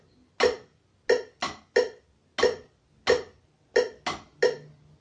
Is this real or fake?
real